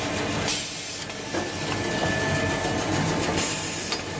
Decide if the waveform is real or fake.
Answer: real